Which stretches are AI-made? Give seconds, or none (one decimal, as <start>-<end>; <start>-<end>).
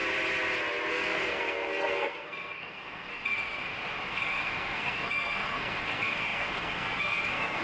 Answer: 0.9-3.6; 4.1-7.6